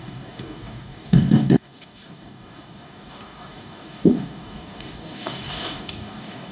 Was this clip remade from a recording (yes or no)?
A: yes